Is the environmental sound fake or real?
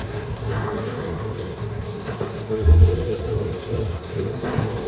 fake